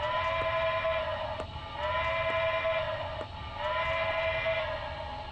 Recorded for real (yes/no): yes